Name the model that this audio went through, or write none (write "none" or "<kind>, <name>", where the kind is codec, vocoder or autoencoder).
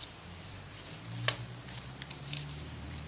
vocoder, BigVGAN v2